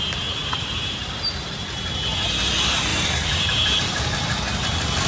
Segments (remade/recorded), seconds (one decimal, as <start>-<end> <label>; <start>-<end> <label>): 0.0-0.4 recorded; 0.4-1.1 remade; 1.1-2.9 recorded; 2.9-3.7 remade; 3.7-5.1 recorded